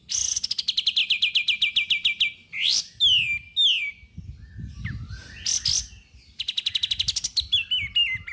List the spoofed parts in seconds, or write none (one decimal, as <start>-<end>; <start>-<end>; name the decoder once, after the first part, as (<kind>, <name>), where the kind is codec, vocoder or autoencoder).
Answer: none